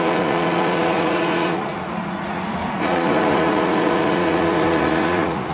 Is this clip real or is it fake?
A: fake